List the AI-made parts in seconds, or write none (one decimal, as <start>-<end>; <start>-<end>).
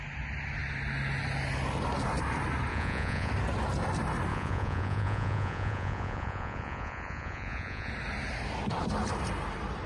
2.7-3.3; 4.3-7.9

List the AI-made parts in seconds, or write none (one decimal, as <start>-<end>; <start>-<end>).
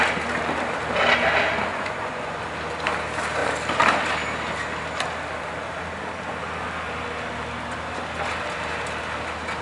1.7-2.4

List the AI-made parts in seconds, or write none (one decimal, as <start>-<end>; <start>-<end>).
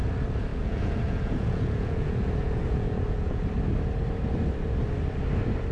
0.5-3.5